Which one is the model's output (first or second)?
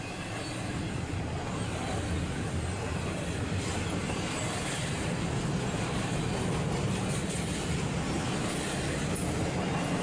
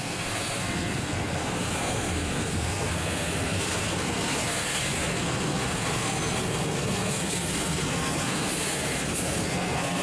second